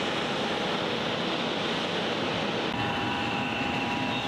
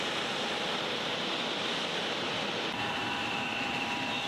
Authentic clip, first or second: first